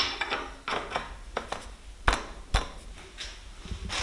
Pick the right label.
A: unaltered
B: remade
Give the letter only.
A